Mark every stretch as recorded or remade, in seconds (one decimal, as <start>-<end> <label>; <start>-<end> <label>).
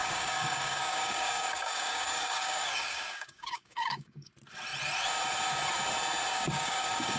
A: 0.0-4.3 remade; 4.3-6.3 recorded; 6.3-7.2 remade